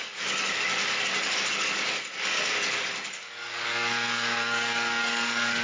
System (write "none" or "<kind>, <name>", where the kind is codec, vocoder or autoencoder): codec, DAC